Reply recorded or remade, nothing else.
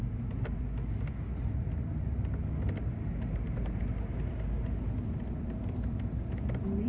recorded